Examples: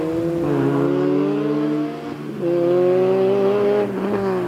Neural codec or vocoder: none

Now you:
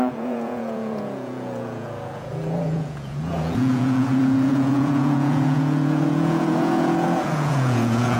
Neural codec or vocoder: vocoder, Vocos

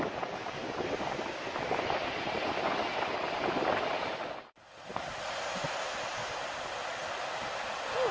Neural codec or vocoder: none